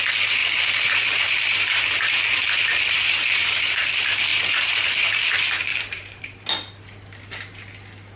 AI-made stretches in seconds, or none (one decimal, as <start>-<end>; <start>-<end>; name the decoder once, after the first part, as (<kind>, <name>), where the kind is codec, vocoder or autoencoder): 0.4-3.9 (vocoder, BigVGAN v2); 4.3-5.3; 5.7-6.5